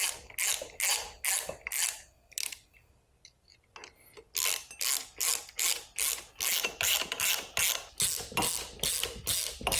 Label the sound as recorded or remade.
recorded